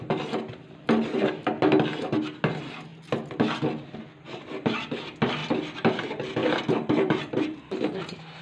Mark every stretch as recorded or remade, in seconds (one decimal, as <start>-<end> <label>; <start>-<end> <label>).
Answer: 0.0-6.4 recorded; 6.4-8.0 remade; 8.0-8.4 recorded